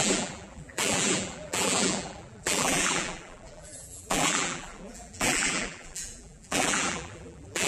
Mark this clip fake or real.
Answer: fake